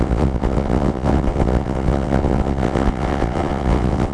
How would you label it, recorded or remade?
remade